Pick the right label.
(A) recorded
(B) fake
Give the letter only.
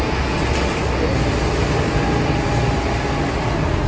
A